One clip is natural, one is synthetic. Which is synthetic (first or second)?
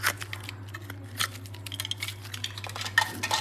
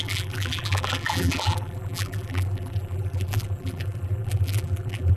second